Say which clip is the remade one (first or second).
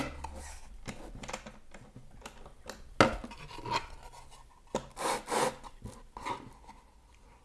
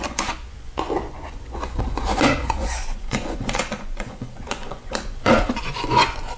second